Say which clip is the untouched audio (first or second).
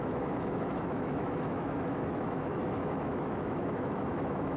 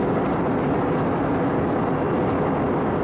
second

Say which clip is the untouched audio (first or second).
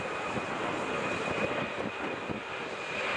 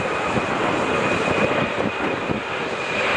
first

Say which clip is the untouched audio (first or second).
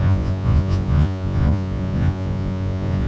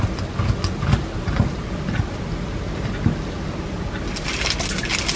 second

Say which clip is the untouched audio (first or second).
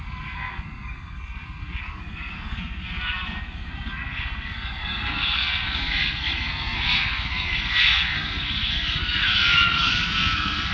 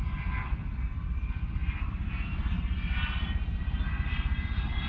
second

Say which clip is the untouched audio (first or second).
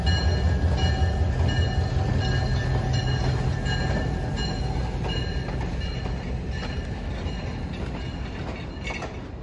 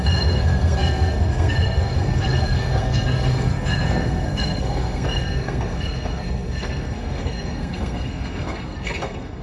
first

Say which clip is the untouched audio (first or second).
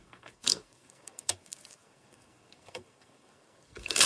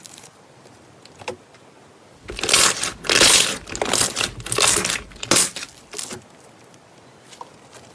second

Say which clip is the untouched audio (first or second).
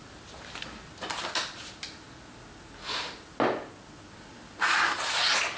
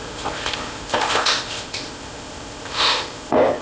first